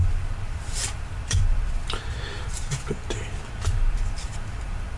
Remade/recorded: remade